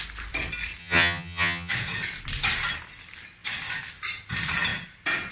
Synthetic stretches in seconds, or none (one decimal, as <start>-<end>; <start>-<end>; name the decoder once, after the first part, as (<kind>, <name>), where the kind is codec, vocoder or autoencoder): 0.8-1.7 (vocoder, HiFi-GAN)